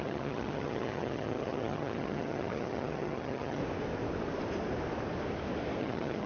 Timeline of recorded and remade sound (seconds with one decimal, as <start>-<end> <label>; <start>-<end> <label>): 0.0-3.6 remade; 3.6-5.8 recorded; 5.8-6.3 remade